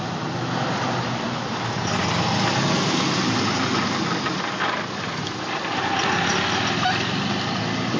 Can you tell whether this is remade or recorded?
recorded